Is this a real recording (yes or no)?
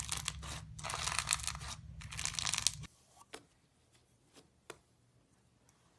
yes